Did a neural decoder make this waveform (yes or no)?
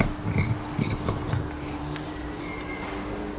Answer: no